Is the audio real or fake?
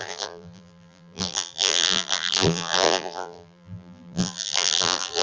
fake